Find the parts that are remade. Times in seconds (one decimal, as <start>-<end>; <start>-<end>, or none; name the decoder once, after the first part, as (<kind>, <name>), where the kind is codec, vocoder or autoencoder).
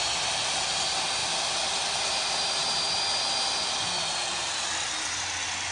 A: 1.2-3.0 (vocoder, BigVGAN v2)